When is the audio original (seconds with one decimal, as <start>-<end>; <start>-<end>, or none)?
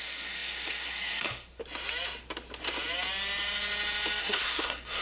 1.6-4.2